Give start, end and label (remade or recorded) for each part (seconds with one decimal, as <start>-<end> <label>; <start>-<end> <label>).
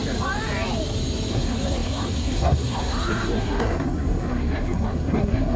0.0-1.3 recorded; 1.3-5.6 remade